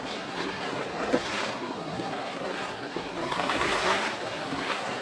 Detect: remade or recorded remade